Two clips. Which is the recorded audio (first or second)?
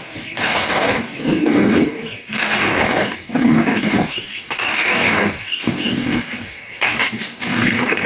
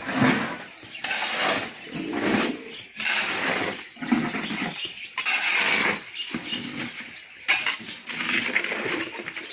second